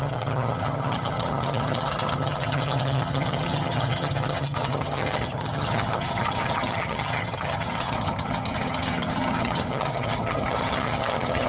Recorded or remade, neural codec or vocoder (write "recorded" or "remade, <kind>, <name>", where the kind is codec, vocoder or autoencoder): remade, vocoder, HiFi-GAN